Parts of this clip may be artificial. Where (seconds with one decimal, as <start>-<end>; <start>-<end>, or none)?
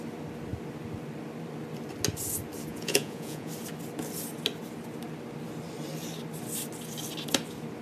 2.7-3.5